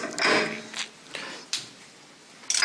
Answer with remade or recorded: recorded